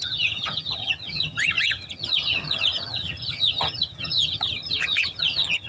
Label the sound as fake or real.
fake